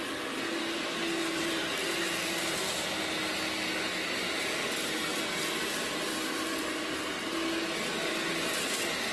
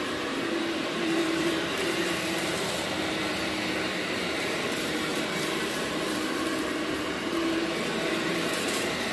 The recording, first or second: first